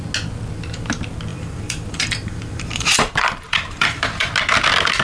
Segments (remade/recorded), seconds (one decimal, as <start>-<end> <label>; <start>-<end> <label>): 0.0-1.3 recorded; 1.3-4.3 remade; 4.3-5.0 recorded